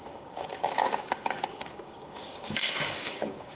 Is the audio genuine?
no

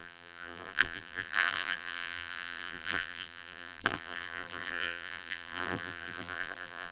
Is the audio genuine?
no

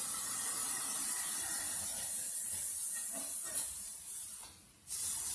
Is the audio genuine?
no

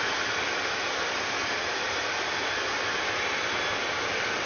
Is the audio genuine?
no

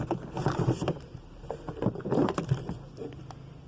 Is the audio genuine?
yes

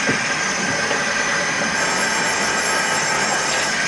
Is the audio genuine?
yes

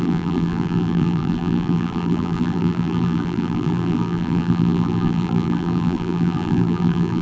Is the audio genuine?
no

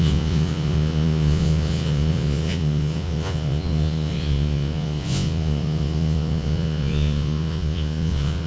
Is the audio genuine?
no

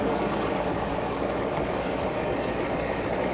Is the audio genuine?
no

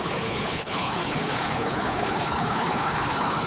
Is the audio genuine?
no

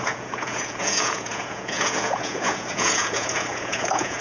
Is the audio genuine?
no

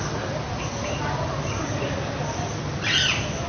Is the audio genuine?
yes